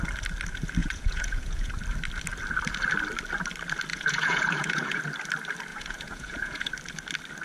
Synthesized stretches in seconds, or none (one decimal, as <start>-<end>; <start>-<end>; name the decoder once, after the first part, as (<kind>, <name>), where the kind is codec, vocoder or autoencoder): 0.8-1.7 (vocoder, Vocos); 3.9-5.0; 5.7-6.7